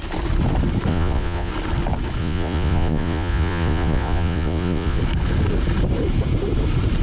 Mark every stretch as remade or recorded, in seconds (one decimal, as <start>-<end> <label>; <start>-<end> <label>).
0.0-0.9 recorded; 0.9-1.5 remade; 1.5-2.2 recorded; 2.2-5.0 remade; 5.0-7.0 recorded